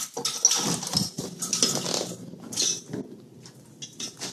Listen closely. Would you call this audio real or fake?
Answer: real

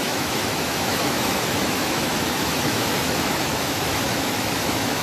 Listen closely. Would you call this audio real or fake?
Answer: fake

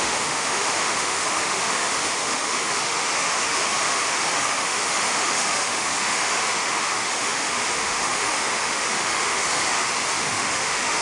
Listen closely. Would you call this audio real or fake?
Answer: fake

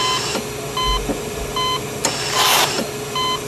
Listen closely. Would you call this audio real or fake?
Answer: real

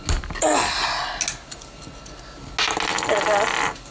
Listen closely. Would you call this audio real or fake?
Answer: real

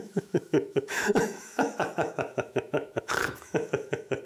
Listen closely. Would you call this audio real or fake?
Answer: fake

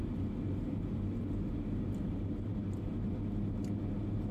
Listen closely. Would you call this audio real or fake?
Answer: real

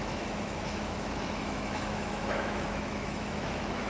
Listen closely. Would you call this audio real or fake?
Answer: fake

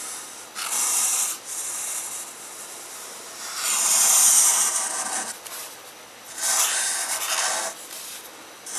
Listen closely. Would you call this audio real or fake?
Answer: real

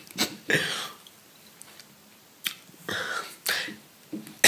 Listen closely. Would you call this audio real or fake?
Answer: real